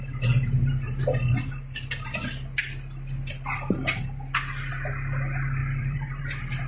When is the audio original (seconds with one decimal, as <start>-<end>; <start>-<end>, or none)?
0.0-5.6; 6.2-6.7

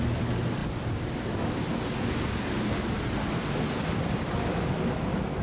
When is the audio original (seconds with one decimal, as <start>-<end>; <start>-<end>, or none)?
0.0-5.4

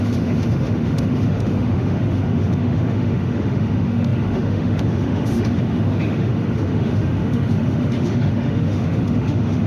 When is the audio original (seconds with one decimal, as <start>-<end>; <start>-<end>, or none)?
none